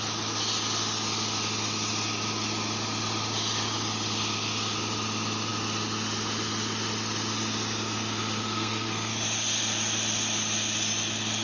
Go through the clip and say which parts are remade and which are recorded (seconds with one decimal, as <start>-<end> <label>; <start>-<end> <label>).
0.0-8.4 recorded; 8.4-9.1 remade; 9.1-11.4 recorded